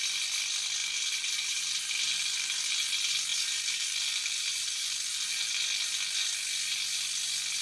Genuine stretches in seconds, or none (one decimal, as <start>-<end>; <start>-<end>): 0.0-0.8; 2.9-3.3; 5.6-7.6

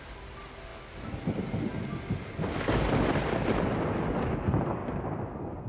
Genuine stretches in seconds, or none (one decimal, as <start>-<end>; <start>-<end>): 0.0-4.8

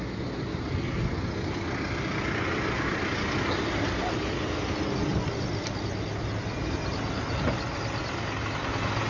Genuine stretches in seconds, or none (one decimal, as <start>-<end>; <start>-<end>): 0.0-9.1

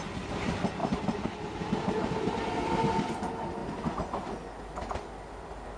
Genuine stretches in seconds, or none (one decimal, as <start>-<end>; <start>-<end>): 0.0-0.8; 2.4-5.8

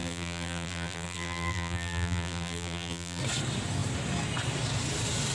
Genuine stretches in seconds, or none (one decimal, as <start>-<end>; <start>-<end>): 3.2-5.3

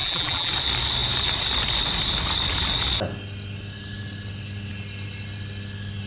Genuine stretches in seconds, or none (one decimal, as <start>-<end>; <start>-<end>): 0.5-6.1

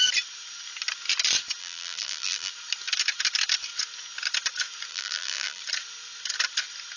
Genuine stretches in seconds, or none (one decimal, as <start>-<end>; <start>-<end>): 0.0-1.6; 2.5-4.9; 5.6-7.0

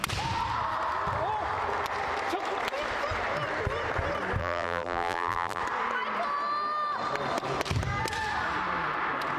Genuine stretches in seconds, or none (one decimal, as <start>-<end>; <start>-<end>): 0.0-4.4; 5.6-9.4